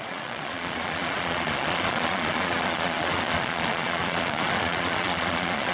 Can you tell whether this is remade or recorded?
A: remade